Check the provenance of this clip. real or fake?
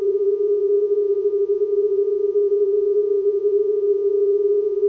fake